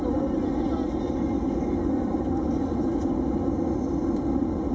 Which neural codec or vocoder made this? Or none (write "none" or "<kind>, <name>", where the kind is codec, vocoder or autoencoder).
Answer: none